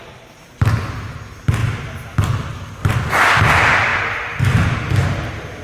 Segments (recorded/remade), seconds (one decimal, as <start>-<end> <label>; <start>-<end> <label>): 0.0-1.6 recorded; 1.6-3.1 remade; 3.1-3.9 recorded; 3.9-4.4 remade; 4.4-5.6 recorded